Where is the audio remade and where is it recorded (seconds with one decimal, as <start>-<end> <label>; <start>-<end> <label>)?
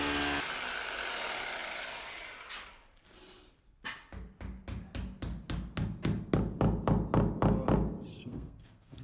0.0-8.1 recorded; 8.1-9.0 remade